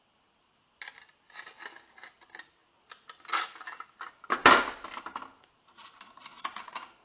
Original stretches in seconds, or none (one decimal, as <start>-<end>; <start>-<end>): 0.0-7.0